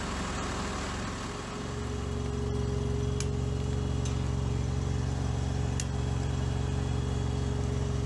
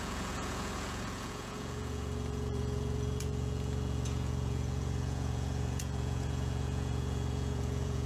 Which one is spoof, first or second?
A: second